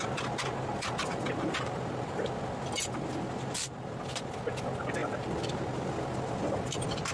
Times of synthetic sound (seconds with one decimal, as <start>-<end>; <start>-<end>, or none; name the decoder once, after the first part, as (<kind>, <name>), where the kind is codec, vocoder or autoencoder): 5.0-5.5 (vocoder, BigVGAN v2)